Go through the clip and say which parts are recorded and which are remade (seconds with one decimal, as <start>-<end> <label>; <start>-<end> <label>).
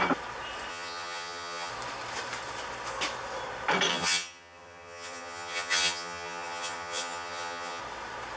0.0-0.7 recorded; 0.7-1.7 remade; 1.7-3.9 recorded; 3.9-7.8 remade; 7.8-8.4 recorded